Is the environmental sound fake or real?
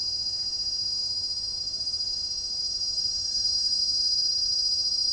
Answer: real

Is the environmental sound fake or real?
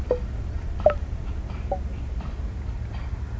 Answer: real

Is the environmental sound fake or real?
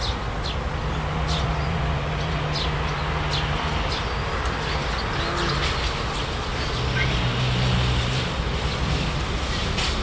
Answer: real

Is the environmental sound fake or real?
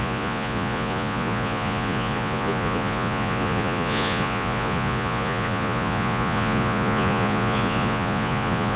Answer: fake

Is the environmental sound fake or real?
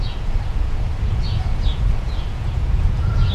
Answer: fake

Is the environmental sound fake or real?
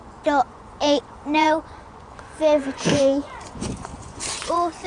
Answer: fake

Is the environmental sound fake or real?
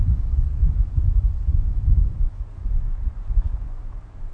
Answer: fake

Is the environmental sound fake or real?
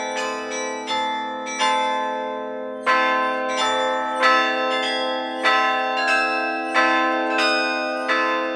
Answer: real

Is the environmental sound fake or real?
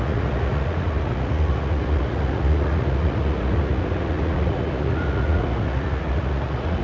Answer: fake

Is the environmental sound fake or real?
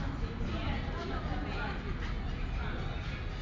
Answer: real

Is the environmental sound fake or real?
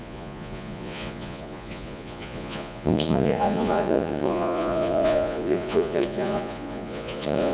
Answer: fake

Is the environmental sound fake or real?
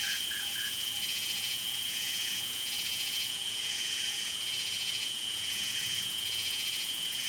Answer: fake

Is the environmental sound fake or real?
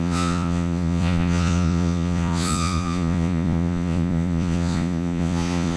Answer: fake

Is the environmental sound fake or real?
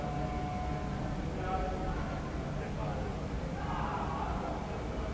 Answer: real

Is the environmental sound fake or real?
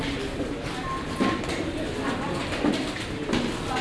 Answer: real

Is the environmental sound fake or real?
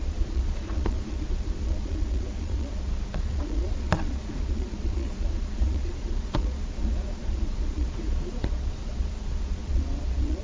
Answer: fake